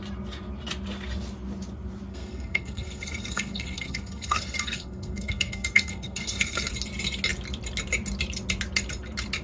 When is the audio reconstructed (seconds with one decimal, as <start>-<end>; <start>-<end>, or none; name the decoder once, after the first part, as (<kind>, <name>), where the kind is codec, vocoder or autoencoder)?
2.1-6.7 (codec, SNAC)